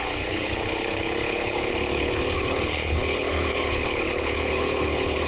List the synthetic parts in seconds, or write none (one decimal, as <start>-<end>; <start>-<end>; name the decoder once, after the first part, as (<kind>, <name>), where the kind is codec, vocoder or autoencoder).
0.0-5.3 (codec, HILCodec)